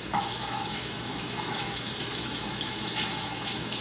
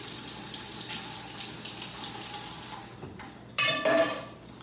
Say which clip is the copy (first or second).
first